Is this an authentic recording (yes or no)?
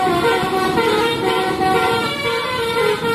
no